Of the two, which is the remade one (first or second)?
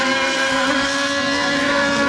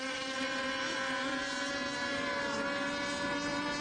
first